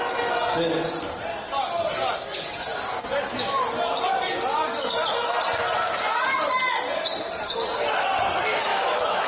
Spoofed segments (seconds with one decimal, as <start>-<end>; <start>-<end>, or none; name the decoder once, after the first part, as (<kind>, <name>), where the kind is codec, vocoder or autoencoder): 8.7-9.3 (autoencoder, DAC-VAE)